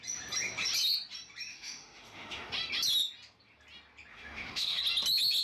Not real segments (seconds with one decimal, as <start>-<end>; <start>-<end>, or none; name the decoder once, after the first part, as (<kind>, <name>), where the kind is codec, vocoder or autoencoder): 1.5-2.5 (autoencoder, DAC-VAE); 4.1-4.8